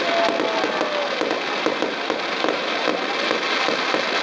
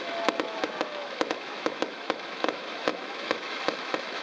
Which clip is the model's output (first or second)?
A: second